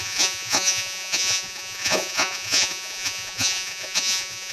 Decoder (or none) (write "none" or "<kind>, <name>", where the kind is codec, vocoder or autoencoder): vocoder, Vocos